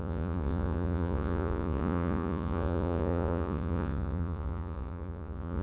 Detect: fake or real fake